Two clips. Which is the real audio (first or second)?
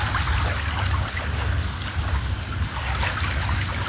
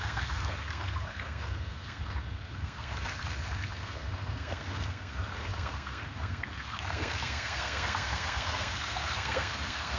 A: first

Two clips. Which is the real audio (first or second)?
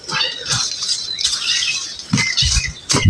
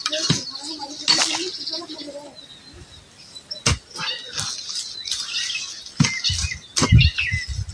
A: second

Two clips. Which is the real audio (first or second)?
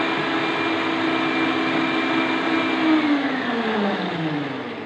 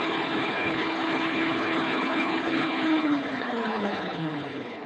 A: first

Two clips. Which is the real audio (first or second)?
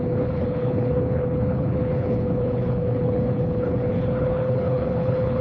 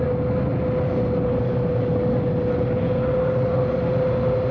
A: second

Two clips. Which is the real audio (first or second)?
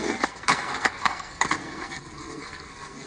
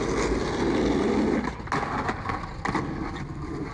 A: second